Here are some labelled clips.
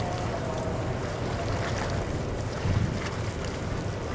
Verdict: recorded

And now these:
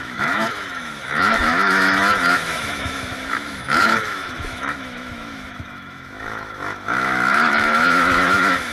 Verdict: remade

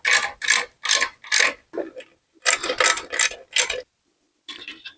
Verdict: recorded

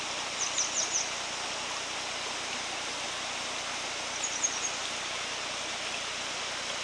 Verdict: recorded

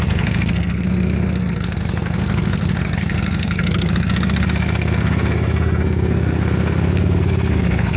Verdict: remade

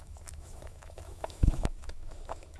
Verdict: remade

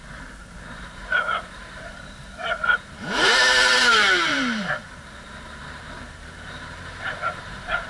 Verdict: remade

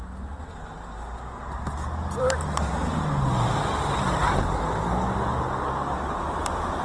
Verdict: recorded